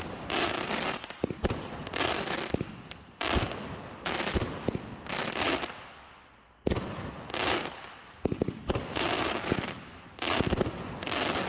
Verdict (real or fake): real